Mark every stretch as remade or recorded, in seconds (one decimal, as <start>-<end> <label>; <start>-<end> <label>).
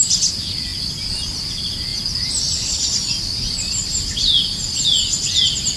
0.0-5.8 recorded